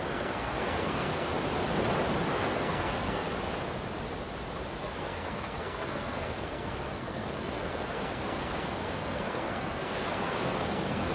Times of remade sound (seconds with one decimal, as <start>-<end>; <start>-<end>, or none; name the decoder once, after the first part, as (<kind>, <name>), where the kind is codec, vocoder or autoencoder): 0.0-1.3 (codec, SNAC); 2.3-3.3; 4.8-11.1